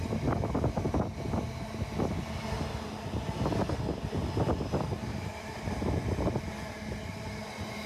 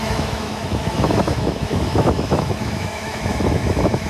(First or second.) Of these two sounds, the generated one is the second